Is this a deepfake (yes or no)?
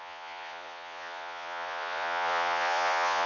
yes